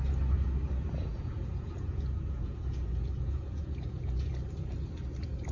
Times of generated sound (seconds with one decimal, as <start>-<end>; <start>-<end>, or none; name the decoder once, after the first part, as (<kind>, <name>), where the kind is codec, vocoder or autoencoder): 1.1-4.3 (vocoder, Vocos)